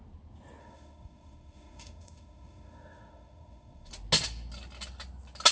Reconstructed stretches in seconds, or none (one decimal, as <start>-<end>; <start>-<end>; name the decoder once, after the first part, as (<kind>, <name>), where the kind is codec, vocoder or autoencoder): 0.6-3.9 (autoencoder, DAC-VAE)